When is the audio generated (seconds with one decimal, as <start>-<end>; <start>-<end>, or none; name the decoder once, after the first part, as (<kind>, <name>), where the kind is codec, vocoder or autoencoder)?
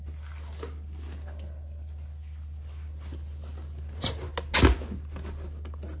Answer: none